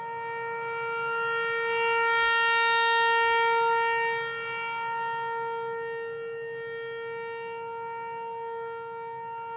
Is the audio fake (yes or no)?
no